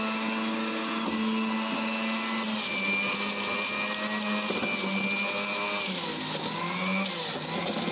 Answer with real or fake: real